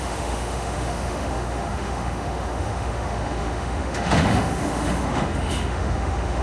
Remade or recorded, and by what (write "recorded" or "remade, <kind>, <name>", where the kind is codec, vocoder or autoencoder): remade, autoencoder, DAC-VAE